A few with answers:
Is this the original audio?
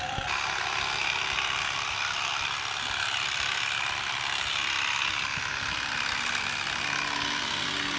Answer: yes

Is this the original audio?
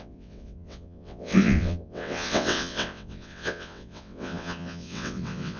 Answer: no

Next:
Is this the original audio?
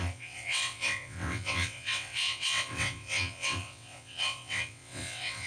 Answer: no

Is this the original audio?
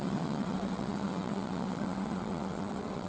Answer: no